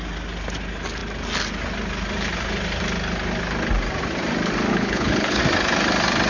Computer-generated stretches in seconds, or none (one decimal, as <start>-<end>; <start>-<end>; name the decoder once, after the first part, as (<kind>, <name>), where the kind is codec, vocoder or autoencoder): 4.7-5.4 (codec, HILCodec)